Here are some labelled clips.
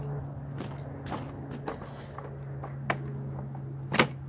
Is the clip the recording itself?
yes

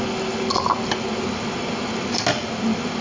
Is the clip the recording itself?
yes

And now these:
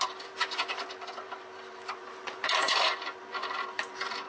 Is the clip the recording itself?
no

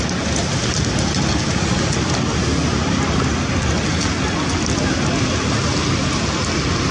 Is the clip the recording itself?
yes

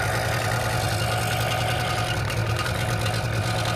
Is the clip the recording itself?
yes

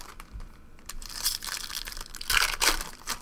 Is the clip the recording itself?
no